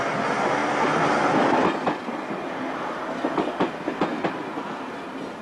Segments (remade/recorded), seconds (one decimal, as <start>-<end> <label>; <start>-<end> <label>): 0.0-5.4 recorded